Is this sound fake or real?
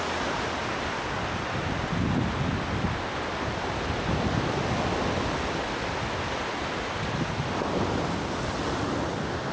real